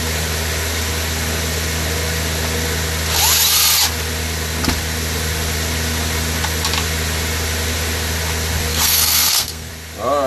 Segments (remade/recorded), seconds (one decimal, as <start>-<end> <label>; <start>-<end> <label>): 0.0-8.7 recorded; 8.7-9.7 remade; 9.7-10.3 recorded